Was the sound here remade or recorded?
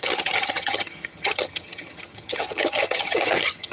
remade